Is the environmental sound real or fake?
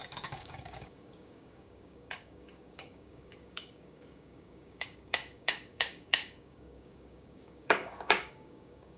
fake